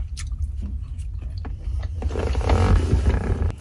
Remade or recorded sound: recorded